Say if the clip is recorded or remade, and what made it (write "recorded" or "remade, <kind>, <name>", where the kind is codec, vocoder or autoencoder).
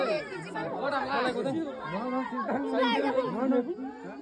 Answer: recorded